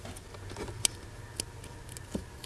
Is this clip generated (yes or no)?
no